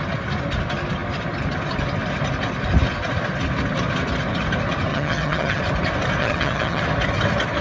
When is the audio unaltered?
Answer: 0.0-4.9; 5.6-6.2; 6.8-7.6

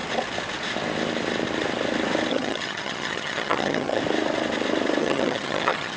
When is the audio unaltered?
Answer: 0.0-2.3; 4.0-5.0

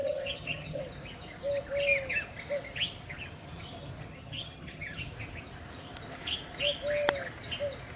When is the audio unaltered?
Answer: 0.8-4.1; 5.0-8.0

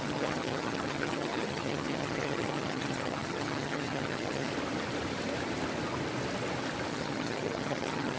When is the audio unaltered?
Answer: 4.5-6.9

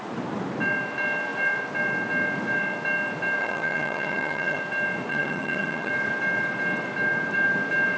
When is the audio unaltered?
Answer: 0.0-3.4; 4.6-5.1; 5.9-8.0

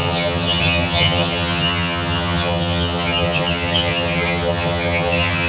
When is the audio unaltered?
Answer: none

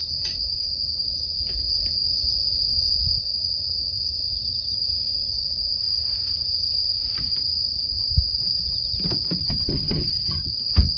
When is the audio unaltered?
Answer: 0.0-9.4; 10.5-11.0